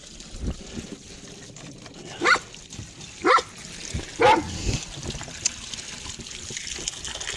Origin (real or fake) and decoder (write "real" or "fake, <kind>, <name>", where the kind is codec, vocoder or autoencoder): real